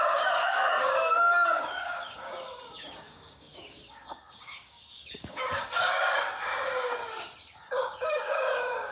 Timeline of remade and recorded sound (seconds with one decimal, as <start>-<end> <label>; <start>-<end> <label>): 0.0-7.0 remade; 7.0-7.8 recorded; 7.8-8.9 remade